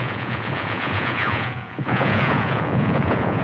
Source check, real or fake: fake